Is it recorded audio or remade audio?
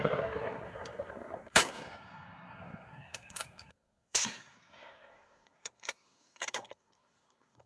remade